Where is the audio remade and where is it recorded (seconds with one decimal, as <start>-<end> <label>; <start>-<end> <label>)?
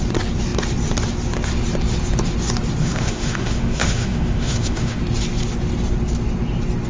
0.0-2.8 recorded; 2.8-5.0 remade; 5.0-6.9 recorded